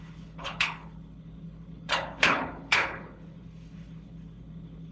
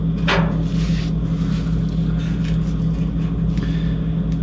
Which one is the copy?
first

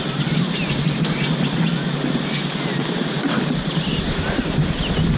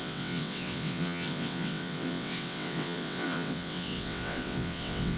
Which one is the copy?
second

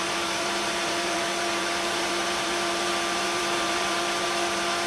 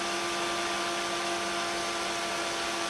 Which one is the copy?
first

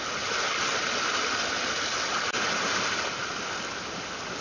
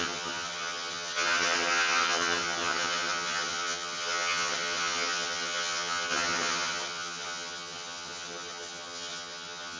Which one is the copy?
second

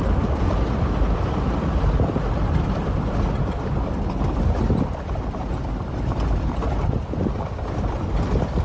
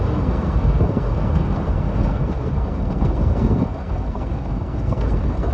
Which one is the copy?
second